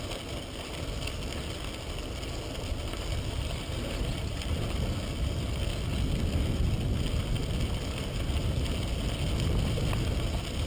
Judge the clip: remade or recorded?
recorded